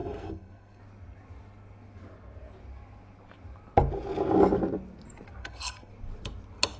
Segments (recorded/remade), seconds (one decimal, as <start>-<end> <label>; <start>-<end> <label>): 0.0-0.8 remade; 0.8-5.4 recorded; 5.4-5.9 remade; 5.9-6.8 recorded